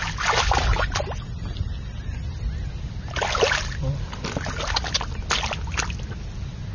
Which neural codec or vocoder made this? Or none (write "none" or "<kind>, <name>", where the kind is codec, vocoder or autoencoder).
none